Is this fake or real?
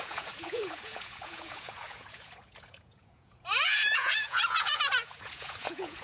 fake